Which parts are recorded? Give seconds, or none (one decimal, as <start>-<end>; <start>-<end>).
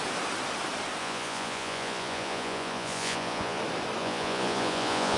0.0-1.0; 3.6-4.0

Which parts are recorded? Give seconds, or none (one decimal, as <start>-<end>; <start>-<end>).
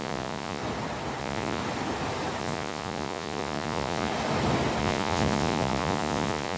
0.6-1.2; 1.6-2.4; 4.1-4.8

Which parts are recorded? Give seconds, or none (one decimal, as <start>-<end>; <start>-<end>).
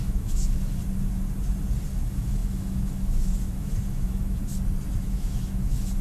0.8-2.0; 4.4-5.0